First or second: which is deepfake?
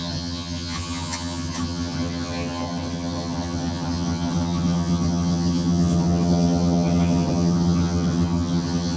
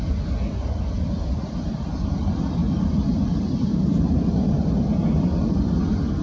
first